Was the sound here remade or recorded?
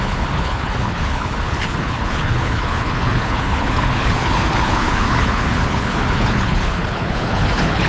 remade